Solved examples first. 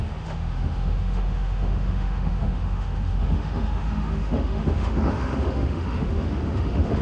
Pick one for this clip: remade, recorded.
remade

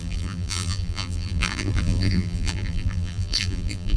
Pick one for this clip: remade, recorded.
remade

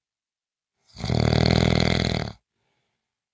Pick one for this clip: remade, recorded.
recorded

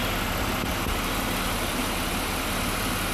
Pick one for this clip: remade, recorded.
recorded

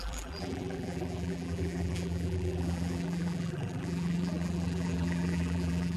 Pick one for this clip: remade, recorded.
remade